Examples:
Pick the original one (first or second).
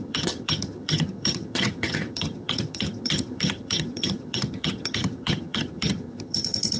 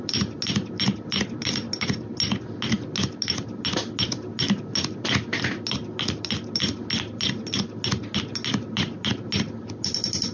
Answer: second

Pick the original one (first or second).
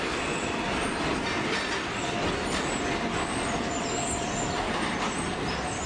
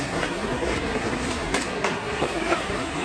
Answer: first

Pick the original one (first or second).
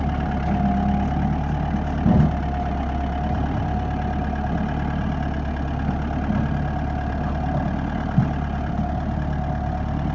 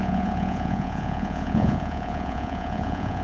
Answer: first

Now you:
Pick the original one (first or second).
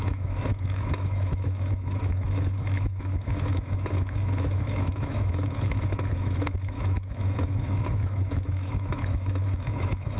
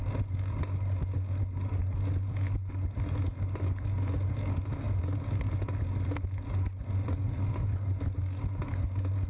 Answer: second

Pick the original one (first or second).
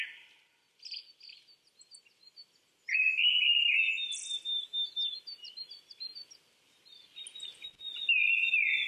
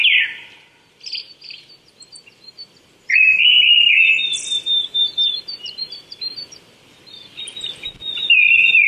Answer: first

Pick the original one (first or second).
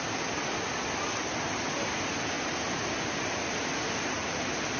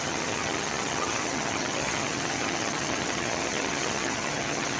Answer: first